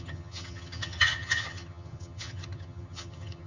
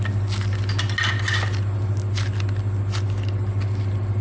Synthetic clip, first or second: first